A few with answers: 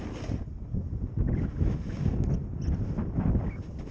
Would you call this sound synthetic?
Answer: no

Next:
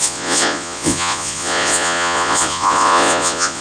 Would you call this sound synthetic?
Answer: yes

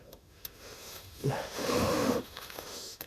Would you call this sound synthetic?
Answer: yes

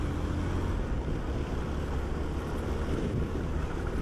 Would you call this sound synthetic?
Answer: no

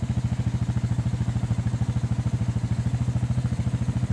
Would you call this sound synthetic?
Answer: no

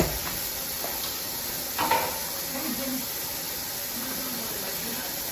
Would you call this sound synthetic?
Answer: no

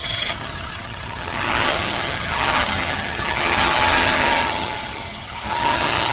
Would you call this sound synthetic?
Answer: yes